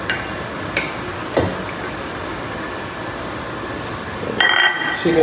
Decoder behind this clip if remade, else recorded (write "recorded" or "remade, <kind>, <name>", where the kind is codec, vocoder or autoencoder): recorded